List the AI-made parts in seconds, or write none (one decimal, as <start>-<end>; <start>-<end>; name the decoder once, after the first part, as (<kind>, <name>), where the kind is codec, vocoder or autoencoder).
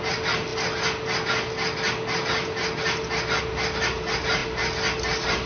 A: none